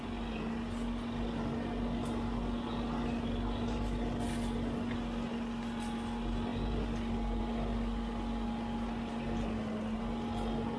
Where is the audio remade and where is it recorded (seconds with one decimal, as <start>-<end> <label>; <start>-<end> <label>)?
0.0-10.8 recorded